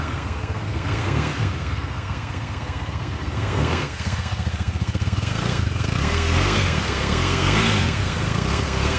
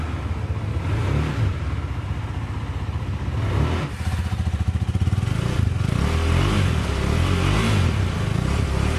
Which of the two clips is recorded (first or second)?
second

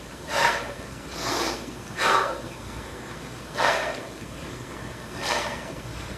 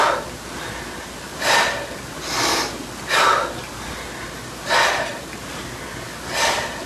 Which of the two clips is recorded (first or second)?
second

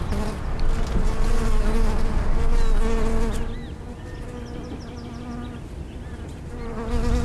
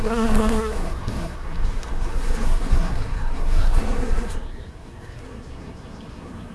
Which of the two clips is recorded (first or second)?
first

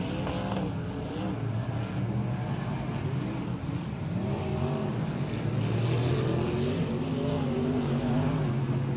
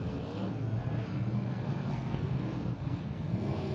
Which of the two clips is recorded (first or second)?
first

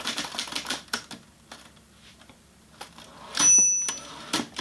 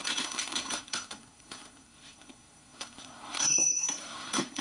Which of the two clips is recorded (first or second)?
first